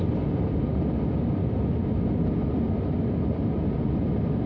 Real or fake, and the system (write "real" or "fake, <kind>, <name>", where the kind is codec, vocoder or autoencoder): real